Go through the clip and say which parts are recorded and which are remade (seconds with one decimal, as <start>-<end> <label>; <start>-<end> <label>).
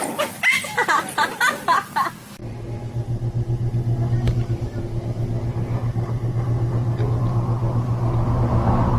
0.0-9.0 recorded